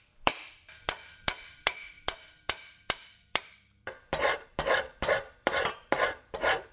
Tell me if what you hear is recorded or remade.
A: remade